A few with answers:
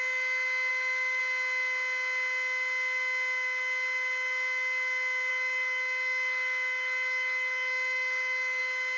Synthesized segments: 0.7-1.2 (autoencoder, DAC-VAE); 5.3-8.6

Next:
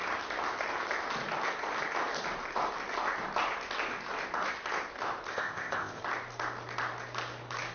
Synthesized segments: 5.3-6.0 (codec, ZipCodec)

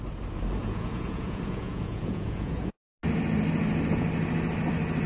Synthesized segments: 0.6-2.7 (vocoder, Vocos)

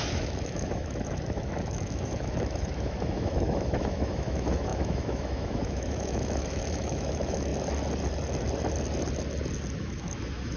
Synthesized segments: 0.0-7.5 (autoencoder, DAC-VAE); 9.8-10.6

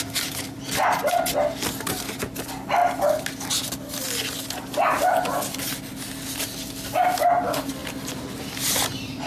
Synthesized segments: none

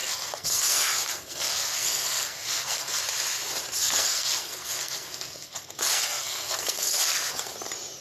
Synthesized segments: 0.0-3.0 (codec, SNAC); 3.8-7.5

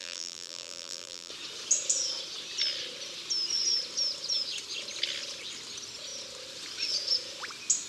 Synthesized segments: 0.0-1.3 (vocoder, BigVGAN v2)

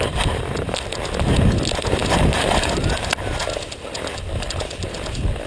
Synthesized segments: none